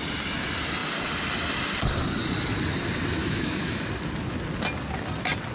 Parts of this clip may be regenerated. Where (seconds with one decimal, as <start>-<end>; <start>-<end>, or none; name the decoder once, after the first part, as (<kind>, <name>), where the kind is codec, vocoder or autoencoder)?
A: 3.2-3.8 (autoencoder, DAC-VAE)